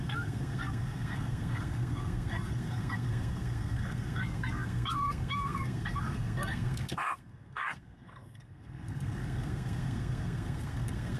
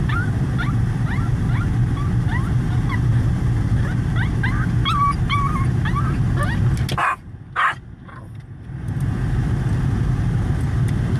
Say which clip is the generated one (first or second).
first